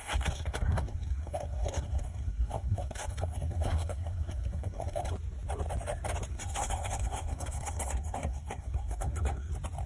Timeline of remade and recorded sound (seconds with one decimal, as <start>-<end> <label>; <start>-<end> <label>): 0.0-5.1 remade; 5.1-6.3 recorded; 6.3-9.5 remade; 9.5-9.9 recorded